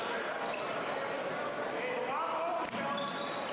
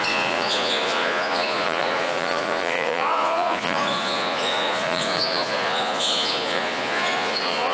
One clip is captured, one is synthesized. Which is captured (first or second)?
first